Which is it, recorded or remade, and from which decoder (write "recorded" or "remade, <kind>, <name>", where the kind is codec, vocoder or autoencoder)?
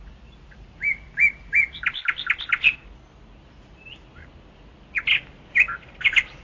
recorded